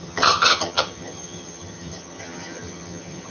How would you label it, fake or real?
fake